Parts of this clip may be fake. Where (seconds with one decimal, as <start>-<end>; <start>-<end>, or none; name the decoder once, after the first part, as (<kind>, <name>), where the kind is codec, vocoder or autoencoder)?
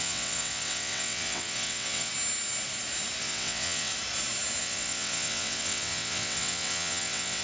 0.0-2.1 (vocoder, WaveNeXt); 3.2-3.9; 4.6-7.4